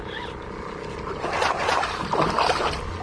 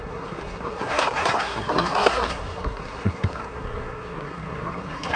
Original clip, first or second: first